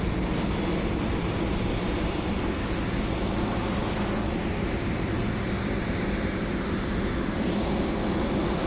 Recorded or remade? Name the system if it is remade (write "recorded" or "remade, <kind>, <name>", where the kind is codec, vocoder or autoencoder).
recorded